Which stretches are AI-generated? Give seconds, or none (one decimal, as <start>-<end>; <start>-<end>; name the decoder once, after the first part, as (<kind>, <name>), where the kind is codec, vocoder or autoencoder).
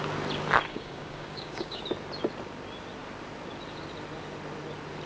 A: 0.7-1.8 (codec, DAC)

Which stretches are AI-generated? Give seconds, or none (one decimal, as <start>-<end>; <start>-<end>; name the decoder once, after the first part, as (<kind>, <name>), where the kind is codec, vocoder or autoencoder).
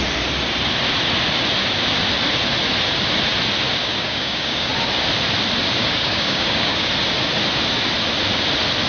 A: 3.8-4.7 (codec, DAC); 5.8-6.9